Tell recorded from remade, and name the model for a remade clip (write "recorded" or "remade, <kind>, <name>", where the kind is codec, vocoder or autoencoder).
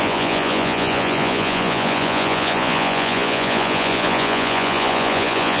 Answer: remade, vocoder, Vocos